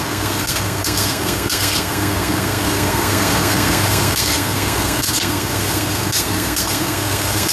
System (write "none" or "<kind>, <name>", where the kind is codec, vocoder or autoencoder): codec, SNAC